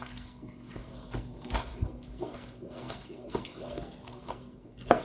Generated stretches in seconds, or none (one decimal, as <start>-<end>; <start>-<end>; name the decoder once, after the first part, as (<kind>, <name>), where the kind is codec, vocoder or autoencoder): 0.0-5.0 (codec, SNAC)